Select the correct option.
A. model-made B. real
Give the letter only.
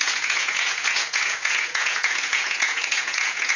A